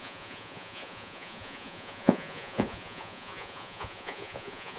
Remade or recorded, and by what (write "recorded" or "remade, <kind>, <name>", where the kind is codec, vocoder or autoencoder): remade, vocoder, Vocos